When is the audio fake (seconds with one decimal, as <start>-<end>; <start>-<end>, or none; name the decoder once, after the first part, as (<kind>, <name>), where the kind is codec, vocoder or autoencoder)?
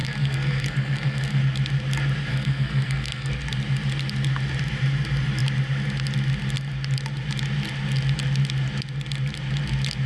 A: 0.0-1.4 (codec, SNAC); 2.3-3.3